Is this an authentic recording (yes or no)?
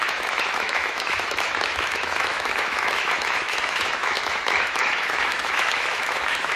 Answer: no